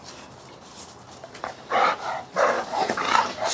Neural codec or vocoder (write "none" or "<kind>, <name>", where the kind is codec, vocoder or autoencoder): none